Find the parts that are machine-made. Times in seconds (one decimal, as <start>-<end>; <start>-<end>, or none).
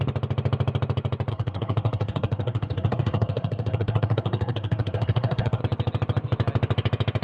1.3-5.6